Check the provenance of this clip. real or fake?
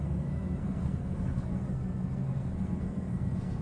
fake